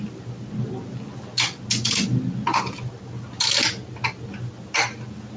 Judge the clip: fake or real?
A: real